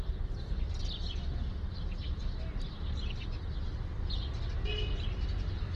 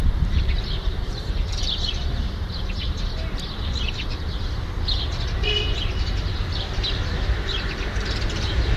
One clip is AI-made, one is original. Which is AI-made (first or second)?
second